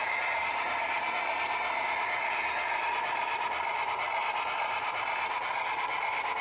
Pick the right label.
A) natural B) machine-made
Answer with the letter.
A